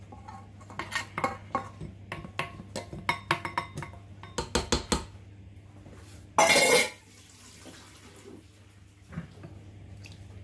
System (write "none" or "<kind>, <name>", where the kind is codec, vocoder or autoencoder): none